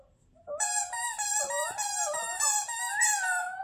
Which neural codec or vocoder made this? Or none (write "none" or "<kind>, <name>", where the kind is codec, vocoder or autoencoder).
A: none